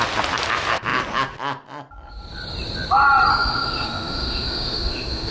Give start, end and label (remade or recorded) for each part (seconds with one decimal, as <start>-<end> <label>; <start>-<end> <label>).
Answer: 0.0-3.3 recorded; 3.3-5.3 remade

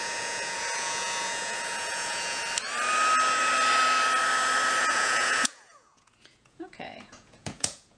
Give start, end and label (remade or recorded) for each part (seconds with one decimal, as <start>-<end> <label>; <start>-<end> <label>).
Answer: 0.0-2.4 remade; 2.4-4.8 recorded; 4.8-8.0 remade

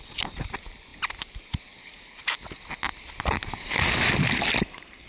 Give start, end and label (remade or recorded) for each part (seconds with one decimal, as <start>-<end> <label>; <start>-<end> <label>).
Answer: 0.0-5.1 recorded